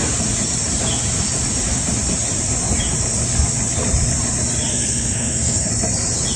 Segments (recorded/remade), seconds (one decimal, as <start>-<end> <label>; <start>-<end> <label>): 0.0-4.7 recorded; 4.7-5.7 remade; 5.7-6.4 recorded